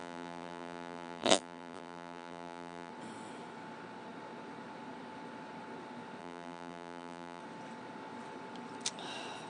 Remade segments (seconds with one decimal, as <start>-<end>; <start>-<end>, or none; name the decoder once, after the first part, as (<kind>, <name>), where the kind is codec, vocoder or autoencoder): 0.0-2.9 (vocoder, BigVGAN v2); 6.2-7.4